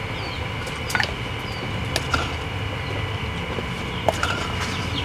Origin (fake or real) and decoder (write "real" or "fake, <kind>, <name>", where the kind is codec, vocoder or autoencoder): real